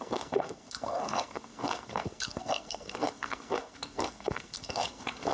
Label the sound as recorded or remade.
remade